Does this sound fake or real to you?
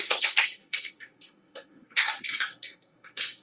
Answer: fake